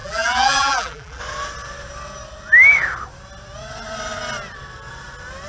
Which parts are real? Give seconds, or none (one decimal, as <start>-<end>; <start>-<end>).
1.2-5.5